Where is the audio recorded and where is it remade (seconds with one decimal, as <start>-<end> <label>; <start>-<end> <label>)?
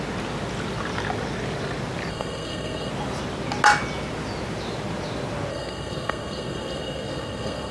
0.0-2.1 recorded; 2.1-2.9 remade; 2.9-5.5 recorded; 5.5-7.7 remade